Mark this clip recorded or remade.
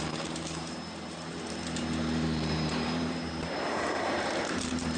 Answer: remade